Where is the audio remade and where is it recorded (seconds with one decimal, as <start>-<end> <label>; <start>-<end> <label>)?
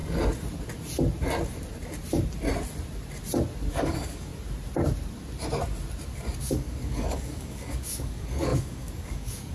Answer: 0.0-3.7 recorded; 3.7-4.3 remade; 4.3-6.4 recorded; 6.4-9.5 remade